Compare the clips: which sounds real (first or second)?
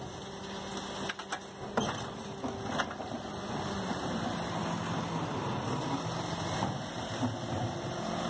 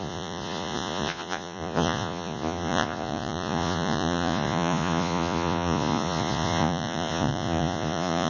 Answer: first